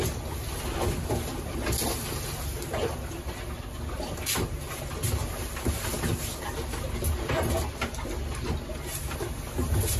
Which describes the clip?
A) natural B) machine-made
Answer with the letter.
A